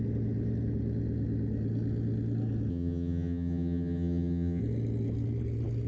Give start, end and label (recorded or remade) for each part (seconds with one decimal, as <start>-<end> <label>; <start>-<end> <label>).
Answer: 0.0-2.7 recorded; 2.7-4.6 remade; 4.6-5.9 recorded